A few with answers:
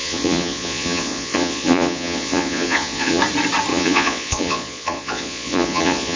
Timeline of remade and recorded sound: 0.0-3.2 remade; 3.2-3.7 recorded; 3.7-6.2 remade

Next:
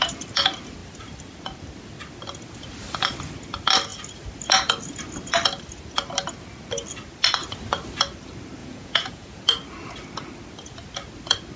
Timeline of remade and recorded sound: 0.0-8.6 recorded; 8.6-9.4 remade; 9.4-11.6 recorded

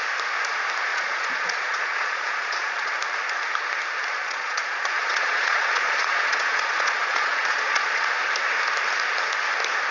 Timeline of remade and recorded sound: 0.0-0.9 recorded; 0.9-3.0 remade; 3.0-4.2 recorded; 4.2-8.0 remade; 8.0-9.9 recorded

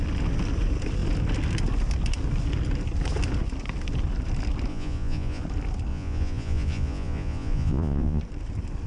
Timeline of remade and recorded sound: 0.0-4.7 recorded; 4.7-5.4 remade; 5.4-5.9 recorded; 5.9-8.2 remade; 8.2-8.9 recorded